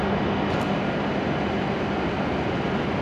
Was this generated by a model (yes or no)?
no